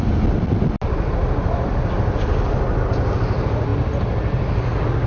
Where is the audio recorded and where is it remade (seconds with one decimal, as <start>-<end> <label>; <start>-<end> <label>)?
0.0-5.1 recorded